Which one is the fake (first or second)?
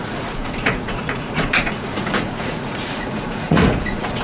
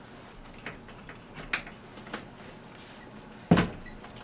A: first